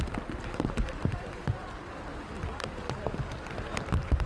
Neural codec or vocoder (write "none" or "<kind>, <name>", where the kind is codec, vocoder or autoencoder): none